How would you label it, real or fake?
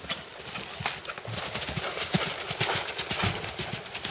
real